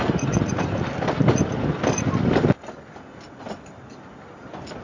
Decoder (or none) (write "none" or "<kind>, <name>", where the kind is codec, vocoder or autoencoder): none